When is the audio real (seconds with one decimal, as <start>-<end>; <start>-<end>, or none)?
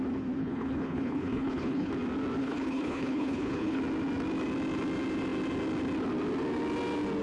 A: 0.0-0.4; 1.9-2.4; 3.8-7.2